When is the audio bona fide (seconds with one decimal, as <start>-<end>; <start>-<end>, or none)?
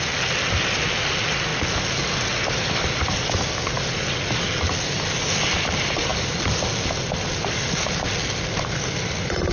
0.0-9.5